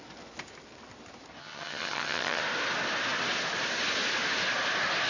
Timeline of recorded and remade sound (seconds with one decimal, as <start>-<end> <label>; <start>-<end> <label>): 0.0-1.4 recorded; 1.4-2.4 remade; 2.4-5.1 recorded